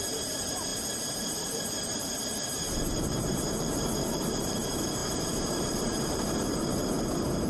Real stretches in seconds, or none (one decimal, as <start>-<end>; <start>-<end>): none